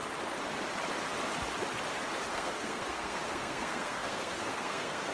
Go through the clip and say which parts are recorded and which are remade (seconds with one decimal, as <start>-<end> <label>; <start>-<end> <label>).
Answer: 0.0-2.3 recorded; 2.3-5.1 remade